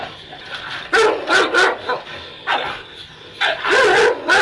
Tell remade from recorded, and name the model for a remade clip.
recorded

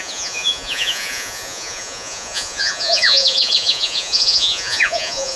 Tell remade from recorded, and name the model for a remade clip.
remade, vocoder, Vocos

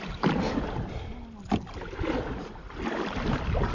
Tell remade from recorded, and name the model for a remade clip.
recorded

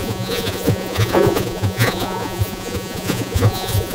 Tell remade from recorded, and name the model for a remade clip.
remade, vocoder, Vocos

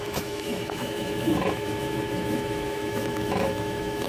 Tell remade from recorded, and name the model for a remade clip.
remade, autoencoder, DAC-VAE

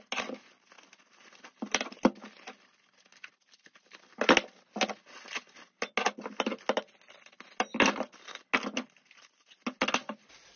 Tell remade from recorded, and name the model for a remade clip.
recorded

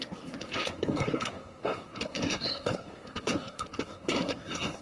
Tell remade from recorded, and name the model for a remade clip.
remade, codec, SNAC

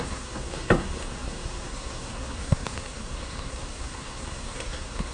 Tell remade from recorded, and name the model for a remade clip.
remade, codec, SNAC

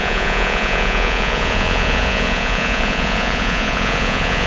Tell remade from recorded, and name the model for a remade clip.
remade, vocoder, Vocos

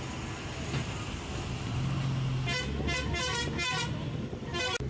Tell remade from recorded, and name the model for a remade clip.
recorded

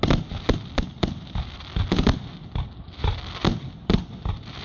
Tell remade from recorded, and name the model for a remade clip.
recorded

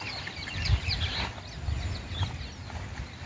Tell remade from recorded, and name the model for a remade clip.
recorded